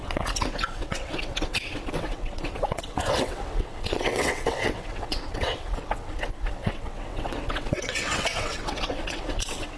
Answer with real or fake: fake